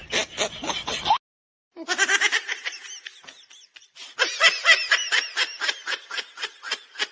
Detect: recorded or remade recorded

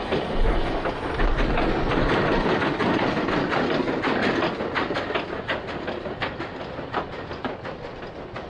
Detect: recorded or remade recorded